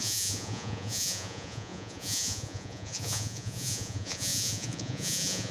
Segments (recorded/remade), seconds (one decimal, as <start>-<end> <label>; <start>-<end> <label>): 0.0-5.5 remade